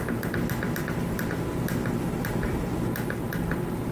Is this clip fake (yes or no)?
no